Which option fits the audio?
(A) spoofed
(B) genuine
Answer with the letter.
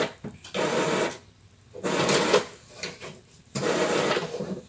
B